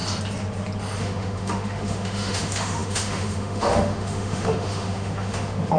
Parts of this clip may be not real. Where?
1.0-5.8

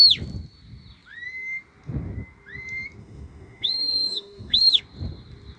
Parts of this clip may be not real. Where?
3.0-4.8

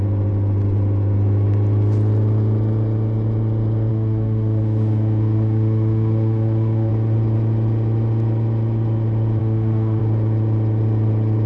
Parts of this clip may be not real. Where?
3.9-6.9; 9.4-10.0

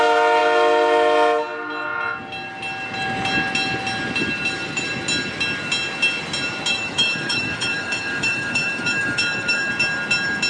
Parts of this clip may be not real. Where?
6.7-9.7

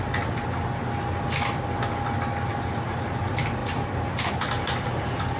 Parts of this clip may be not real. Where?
none

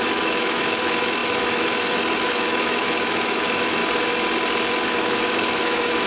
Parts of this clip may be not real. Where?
0.0-3.8; 4.9-6.1